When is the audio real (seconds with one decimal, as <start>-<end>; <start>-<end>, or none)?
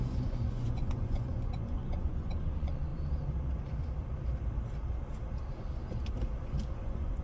2.9-6.7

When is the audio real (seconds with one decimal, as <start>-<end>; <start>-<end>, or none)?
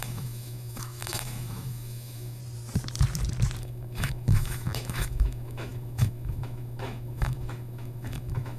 2.4-3.6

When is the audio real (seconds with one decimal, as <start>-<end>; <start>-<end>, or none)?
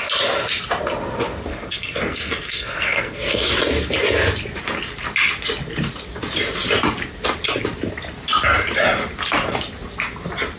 0.0-1.5; 3.5-10.6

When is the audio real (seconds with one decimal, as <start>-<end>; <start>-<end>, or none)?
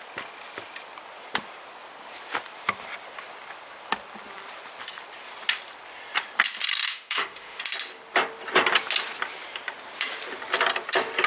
0.0-6.8; 7.6-11.3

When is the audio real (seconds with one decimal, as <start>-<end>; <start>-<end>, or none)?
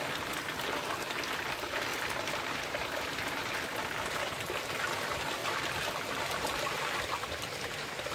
0.0-1.9; 4.7-8.1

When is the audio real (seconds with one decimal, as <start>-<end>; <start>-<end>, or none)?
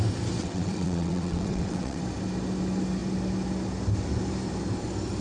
0.0-0.4; 2.0-5.2